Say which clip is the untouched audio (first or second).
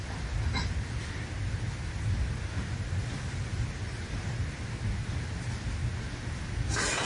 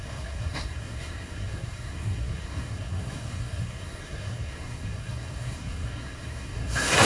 first